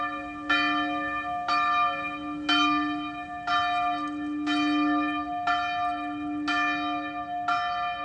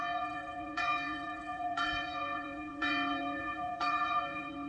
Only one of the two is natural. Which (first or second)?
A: first